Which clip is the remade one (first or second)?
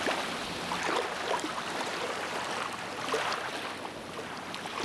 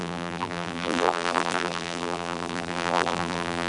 second